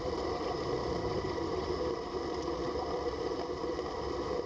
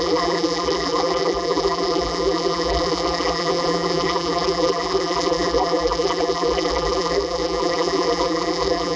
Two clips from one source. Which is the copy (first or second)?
second